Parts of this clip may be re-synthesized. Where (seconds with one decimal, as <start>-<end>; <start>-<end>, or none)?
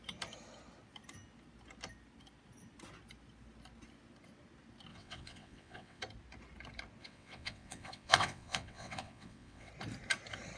4.9-6.0; 7.0-9.7